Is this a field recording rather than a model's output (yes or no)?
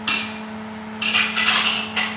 yes